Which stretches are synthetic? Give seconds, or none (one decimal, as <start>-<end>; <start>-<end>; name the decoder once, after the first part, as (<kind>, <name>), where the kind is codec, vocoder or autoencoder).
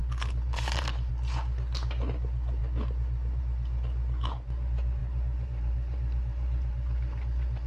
0.0-1.1 (vocoder, BigVGAN v2); 5.0-7.7